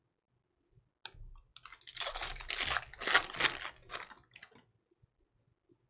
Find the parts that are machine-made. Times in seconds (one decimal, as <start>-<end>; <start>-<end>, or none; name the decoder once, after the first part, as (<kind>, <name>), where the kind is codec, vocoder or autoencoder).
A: none

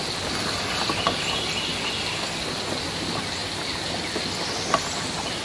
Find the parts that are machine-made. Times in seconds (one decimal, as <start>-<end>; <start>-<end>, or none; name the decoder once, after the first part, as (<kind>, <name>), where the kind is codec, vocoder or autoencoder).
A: none

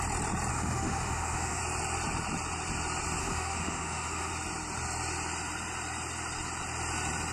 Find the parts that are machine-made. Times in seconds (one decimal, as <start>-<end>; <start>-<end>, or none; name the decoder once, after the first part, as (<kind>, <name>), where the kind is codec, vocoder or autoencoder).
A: 0.5-1.6 (autoencoder, DAC-VAE); 3.2-4.3

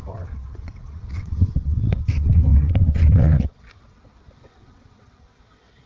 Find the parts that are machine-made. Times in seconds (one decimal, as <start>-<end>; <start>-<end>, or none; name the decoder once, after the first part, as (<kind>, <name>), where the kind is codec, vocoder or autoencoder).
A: 0.0-5.9 (vocoder, WaveNeXt)